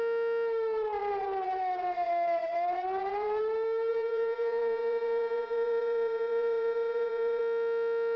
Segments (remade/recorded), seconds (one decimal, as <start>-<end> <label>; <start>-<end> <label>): 0.0-1.0 recorded; 1.0-3.4 remade; 3.4-3.9 recorded; 3.9-7.4 remade; 7.4-8.2 recorded